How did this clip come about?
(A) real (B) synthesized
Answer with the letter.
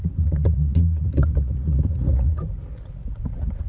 B